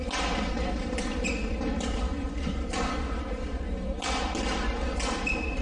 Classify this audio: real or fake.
real